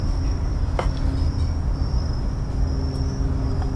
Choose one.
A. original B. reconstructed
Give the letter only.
A